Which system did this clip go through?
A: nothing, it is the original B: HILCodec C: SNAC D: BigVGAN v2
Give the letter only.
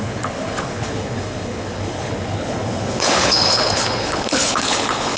B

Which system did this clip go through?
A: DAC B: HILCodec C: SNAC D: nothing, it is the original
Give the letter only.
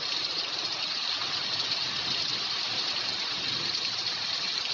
D